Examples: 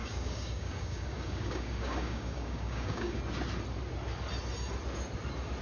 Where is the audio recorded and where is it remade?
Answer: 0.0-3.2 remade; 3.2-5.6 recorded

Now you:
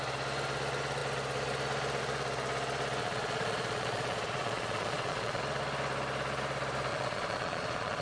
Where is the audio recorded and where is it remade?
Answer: 0.0-3.0 recorded; 3.0-5.4 remade; 5.4-6.9 recorded; 6.9-8.0 remade

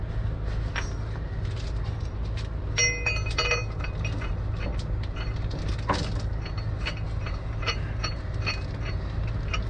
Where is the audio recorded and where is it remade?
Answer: 0.0-9.7 recorded